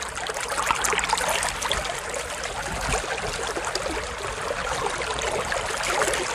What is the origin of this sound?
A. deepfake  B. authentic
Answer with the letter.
B